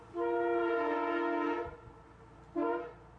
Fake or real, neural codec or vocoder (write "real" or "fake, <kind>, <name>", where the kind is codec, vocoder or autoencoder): real